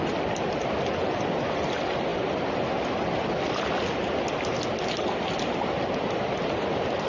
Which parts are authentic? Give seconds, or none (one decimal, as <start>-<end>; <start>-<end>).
0.0-7.1